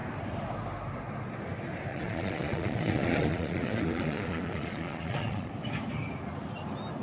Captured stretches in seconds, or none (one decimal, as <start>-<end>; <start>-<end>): 0.0-1.9; 5.5-7.0